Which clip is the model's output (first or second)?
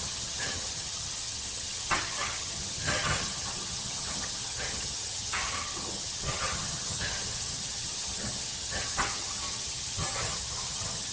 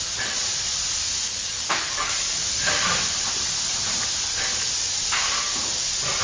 first